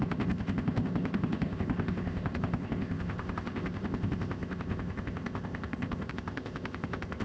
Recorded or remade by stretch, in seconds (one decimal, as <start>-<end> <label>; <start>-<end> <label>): 0.0-7.2 remade